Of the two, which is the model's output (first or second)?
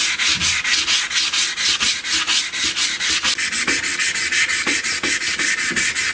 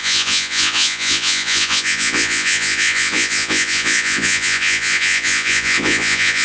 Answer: second